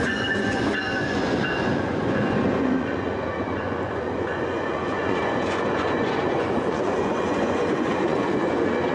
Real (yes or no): no